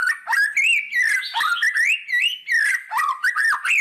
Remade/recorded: recorded